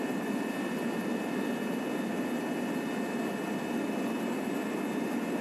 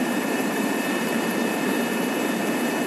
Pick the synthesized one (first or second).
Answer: second